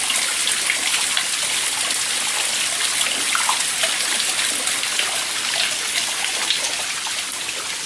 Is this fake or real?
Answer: real